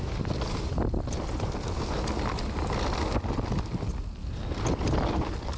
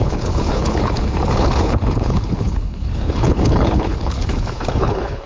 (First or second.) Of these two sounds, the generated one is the second